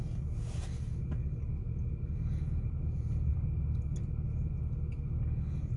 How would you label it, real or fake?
real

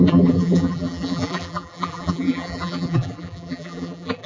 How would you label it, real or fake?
fake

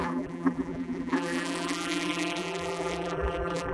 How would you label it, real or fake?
fake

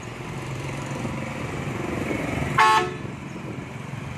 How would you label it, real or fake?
real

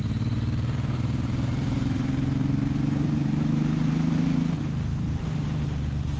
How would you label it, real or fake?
fake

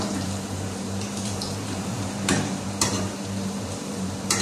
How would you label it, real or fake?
fake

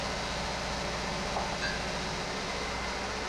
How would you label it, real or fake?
real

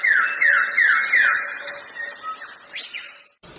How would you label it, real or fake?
real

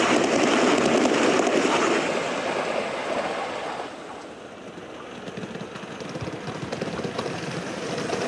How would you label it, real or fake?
real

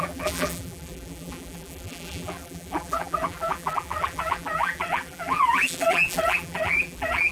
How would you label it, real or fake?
fake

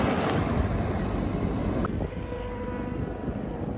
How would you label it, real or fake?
real